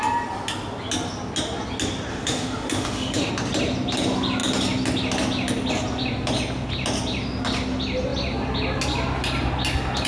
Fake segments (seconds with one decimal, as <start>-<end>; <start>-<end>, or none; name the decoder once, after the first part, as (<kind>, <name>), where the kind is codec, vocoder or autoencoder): 2.1-3.3 (autoencoder, DAC-VAE)